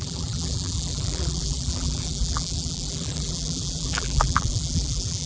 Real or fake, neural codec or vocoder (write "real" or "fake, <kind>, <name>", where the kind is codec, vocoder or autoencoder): fake, vocoder, BigVGAN v2